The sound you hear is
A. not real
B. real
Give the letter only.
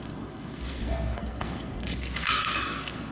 A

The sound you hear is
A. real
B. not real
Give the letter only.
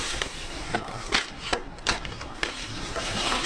B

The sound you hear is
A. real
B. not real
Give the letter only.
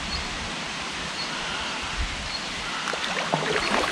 A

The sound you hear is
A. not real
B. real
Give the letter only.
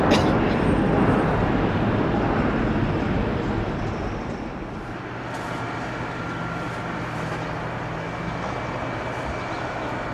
B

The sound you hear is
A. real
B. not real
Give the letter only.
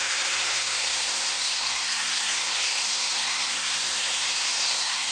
B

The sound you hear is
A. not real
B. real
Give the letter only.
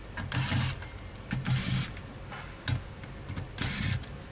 B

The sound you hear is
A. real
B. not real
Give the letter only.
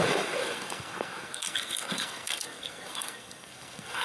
B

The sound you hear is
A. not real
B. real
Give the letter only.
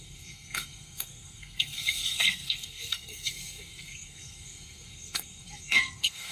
A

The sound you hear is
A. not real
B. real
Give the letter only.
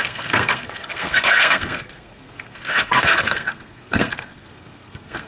A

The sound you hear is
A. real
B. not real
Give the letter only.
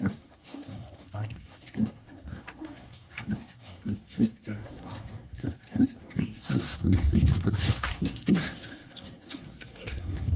B